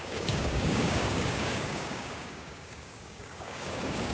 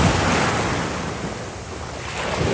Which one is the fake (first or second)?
first